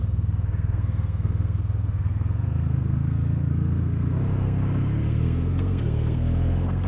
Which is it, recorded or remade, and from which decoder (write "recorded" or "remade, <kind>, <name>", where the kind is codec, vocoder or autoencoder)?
remade, codec, SNAC